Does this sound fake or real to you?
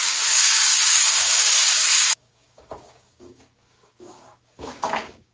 fake